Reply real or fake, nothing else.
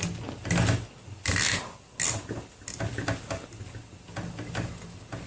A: real